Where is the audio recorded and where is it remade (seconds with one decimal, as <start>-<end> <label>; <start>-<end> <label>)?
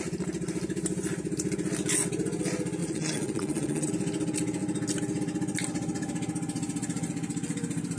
0.0-2.8 recorded; 2.8-3.9 remade; 3.9-8.0 recorded